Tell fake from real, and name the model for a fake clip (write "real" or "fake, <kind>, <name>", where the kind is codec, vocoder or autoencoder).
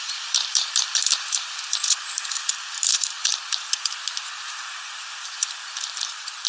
fake, vocoder, BigVGAN v2